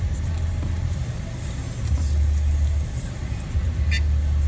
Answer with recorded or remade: recorded